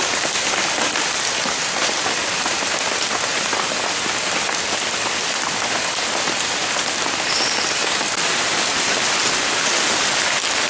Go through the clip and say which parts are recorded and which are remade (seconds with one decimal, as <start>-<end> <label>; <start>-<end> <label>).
0.0-3.3 recorded; 3.3-4.1 remade; 4.1-10.7 recorded